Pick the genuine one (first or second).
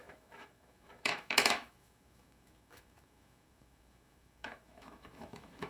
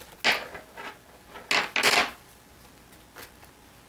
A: second